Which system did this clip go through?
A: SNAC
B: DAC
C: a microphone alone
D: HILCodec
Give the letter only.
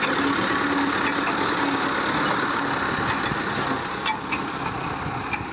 C